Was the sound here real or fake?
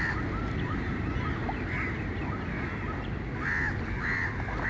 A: real